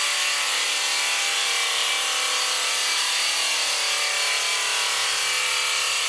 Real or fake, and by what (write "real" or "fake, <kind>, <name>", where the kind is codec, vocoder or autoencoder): real